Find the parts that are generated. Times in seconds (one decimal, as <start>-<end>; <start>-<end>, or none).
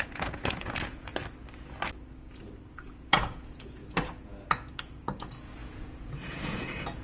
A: 0.0-1.1; 2.7-7.0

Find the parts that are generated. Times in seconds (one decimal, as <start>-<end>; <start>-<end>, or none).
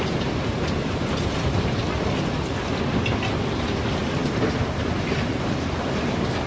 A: 0.0-1.8; 3.5-6.5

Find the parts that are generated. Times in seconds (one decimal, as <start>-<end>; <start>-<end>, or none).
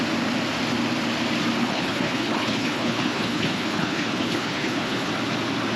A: 1.6-5.1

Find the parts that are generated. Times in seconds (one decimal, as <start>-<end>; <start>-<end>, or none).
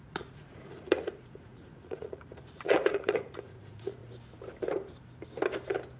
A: 0.0-4.0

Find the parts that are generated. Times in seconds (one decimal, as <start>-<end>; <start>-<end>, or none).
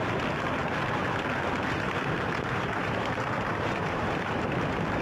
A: 2.8-5.0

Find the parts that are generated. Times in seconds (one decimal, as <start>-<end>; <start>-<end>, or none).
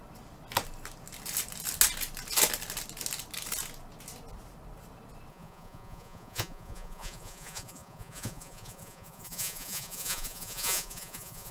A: 5.3-11.5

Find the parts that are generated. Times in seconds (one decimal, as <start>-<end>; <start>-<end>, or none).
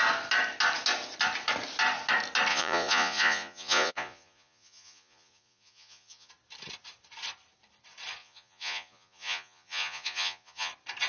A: 2.5-6.3; 8.2-10.7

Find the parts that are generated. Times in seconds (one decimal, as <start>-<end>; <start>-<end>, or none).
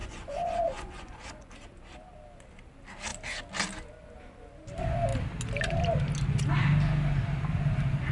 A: 0.0-1.5